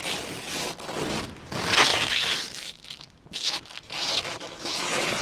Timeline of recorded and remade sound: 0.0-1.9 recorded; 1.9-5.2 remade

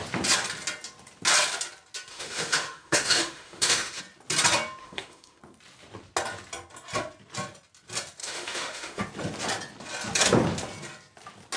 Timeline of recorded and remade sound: 0.0-2.1 recorded; 2.1-4.0 remade; 4.0-4.8 recorded; 4.8-5.4 remade; 5.4-8.2 recorded; 8.2-9.0 remade; 9.0-11.6 recorded

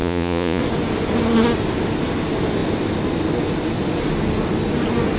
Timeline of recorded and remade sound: 0.0-0.6 remade; 0.6-5.2 recorded